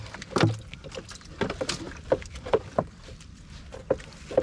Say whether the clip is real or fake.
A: real